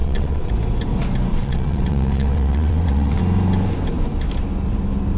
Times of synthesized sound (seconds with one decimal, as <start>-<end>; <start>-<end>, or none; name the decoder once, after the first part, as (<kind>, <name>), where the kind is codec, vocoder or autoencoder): 0.0-0.5 (vocoder, WaveNeXt); 1.3-3.2